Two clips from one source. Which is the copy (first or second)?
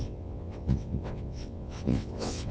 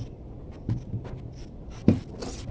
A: first